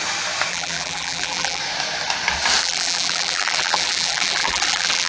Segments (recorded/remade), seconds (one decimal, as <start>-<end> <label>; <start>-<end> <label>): 0.0-0.5 recorded; 0.5-1.6 remade; 1.6-2.6 recorded; 2.6-5.1 remade